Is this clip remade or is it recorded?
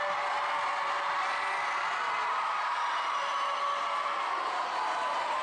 recorded